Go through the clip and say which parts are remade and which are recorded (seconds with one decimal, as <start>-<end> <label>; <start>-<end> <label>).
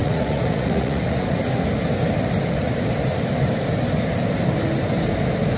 0.0-1.4 remade; 1.4-5.6 recorded